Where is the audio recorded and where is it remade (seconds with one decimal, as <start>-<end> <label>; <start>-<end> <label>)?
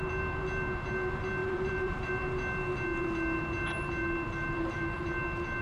0.0-1.4 recorded; 1.4-2.1 remade; 2.1-4.0 recorded; 4.0-5.0 remade; 5.0-5.6 recorded